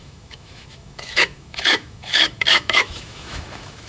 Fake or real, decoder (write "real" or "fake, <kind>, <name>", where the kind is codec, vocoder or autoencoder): fake, autoencoder, DAC-VAE